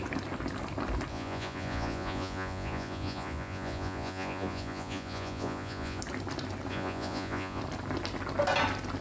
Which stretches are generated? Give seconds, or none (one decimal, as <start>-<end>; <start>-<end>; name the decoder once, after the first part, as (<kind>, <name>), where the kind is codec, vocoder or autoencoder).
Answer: 1.1-6.0 (vocoder, Vocos); 6.7-7.6